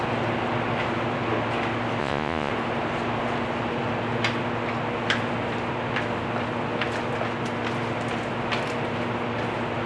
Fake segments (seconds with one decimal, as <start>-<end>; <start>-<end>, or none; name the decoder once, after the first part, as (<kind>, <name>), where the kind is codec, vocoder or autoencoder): 2.0-2.5 (vocoder, Vocos)